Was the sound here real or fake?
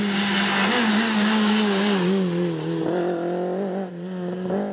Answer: real